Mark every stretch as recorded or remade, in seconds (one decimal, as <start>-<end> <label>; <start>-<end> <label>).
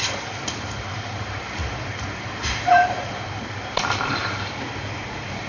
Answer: 0.0-5.5 remade